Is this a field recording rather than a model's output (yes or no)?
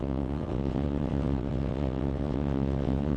no